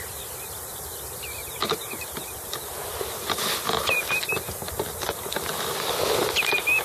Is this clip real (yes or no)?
no